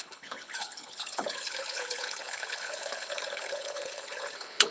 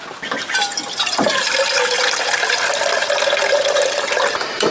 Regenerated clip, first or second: first